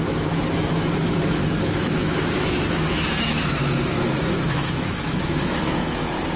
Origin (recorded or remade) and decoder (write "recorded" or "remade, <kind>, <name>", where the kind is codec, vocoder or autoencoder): remade, autoencoder, DAC-VAE